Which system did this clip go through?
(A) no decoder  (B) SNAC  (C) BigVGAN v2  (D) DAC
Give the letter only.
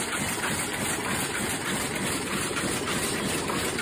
A